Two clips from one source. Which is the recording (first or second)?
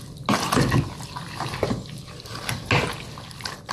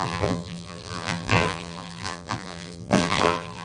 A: first